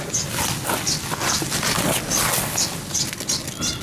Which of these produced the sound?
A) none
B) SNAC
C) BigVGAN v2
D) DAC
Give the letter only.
A